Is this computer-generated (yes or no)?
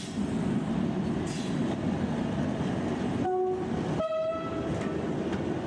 no